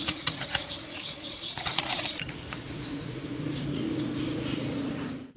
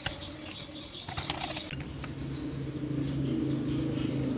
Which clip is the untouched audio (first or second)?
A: second